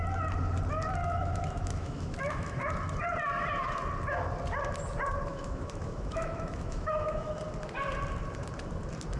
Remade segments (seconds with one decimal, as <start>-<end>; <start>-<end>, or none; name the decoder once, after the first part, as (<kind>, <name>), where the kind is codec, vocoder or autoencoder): 1.0-2.7 (autoencoder, DAC-VAE); 5.3-7.4